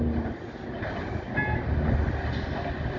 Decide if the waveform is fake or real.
real